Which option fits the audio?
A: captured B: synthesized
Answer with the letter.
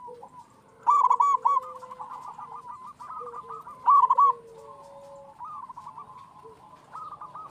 A